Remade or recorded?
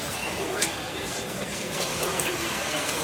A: remade